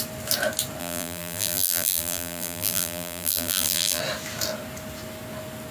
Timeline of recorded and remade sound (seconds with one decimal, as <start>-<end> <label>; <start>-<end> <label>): 0.0-0.8 recorded; 0.8-4.0 remade; 4.0-5.7 recorded